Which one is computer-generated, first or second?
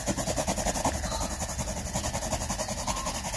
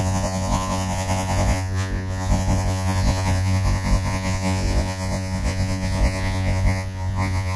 second